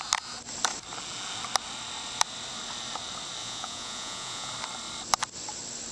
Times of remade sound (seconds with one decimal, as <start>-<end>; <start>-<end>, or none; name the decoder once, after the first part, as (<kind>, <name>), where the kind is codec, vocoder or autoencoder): 3.4-4.5 (vocoder, Vocos)